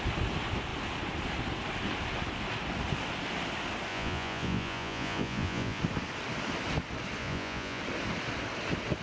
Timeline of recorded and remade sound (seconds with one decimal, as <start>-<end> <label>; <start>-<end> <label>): 0.0-3.9 recorded; 3.9-5.8 remade; 5.8-7.2 recorded; 7.2-7.8 remade; 7.8-9.0 recorded